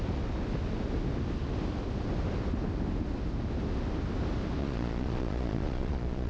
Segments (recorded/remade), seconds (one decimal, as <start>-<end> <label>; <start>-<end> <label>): 0.0-4.6 recorded; 4.6-6.3 remade